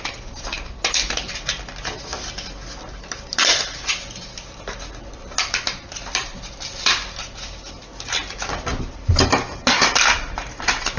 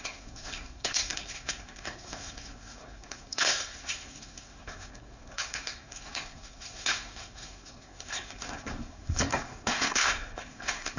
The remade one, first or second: second